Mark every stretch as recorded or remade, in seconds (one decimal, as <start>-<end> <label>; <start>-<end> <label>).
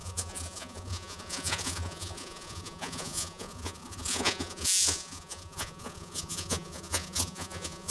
0.0-7.9 remade